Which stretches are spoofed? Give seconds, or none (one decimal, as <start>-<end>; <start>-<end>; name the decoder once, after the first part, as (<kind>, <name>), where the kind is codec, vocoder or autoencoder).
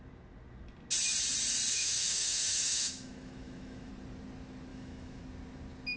1.7-3.9 (autoencoder, DAC-VAE); 4.7-5.2